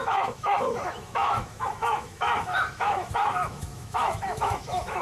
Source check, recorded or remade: remade